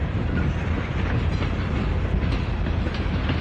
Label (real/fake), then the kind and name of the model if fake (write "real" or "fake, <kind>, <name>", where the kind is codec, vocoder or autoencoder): fake, vocoder, BigVGAN v2